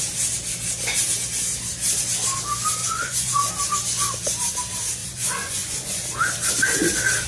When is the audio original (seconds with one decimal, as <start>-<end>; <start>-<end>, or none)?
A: 0.0-2.8; 3.5-5.0; 6.0-7.3